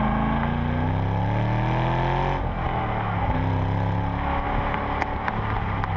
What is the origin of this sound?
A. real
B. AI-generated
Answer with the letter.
A